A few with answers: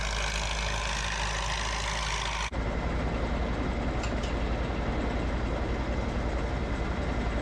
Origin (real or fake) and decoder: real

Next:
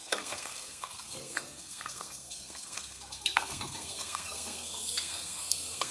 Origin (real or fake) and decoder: fake, codec, SNAC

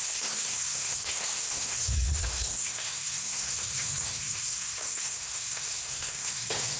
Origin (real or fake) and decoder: fake, codec, SNAC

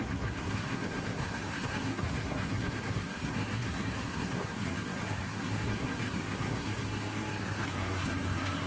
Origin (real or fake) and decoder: fake, codec, SNAC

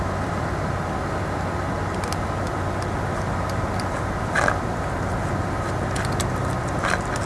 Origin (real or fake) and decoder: real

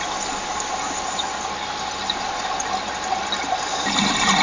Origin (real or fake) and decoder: real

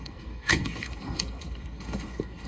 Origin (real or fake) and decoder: fake, codec, SNAC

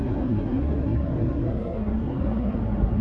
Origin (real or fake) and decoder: fake, codec, SNAC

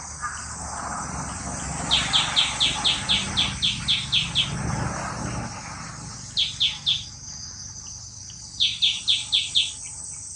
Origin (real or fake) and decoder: real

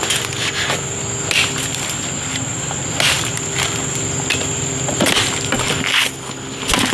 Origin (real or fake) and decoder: real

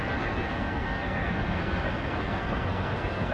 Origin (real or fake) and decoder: fake, codec, SNAC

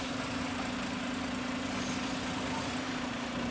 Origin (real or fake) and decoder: real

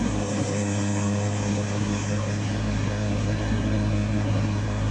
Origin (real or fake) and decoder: fake, codec, SNAC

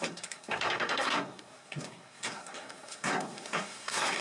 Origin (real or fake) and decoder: fake, codec, SNAC